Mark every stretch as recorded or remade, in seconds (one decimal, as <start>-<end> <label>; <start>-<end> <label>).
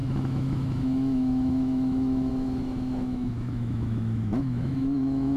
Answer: 0.0-5.4 remade